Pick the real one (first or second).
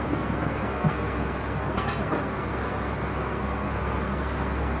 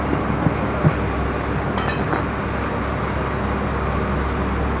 second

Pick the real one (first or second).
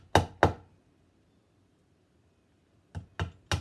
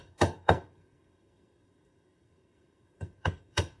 first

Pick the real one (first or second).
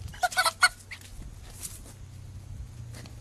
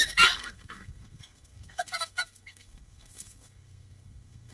first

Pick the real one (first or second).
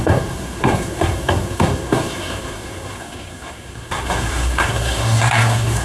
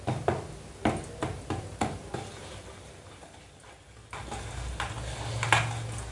second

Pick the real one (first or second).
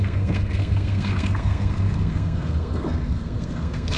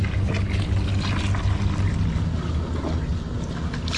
second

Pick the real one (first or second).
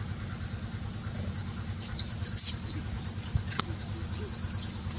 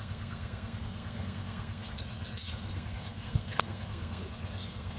first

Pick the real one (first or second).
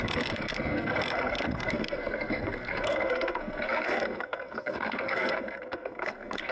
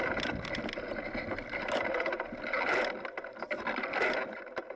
second